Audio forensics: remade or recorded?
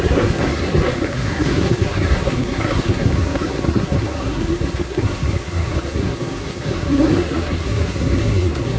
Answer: remade